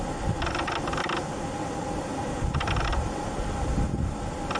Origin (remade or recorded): recorded